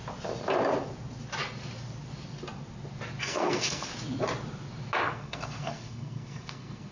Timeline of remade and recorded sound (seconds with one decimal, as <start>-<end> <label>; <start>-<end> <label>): 0.0-3.2 recorded; 3.2-3.9 remade; 3.9-5.0 recorded; 5.0-6.9 remade